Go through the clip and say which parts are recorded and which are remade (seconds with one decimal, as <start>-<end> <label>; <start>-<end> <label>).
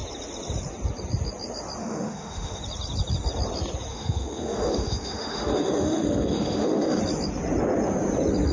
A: 0.0-1.8 recorded; 1.8-2.6 remade; 2.6-3.9 recorded; 3.9-7.0 remade; 7.0-8.5 recorded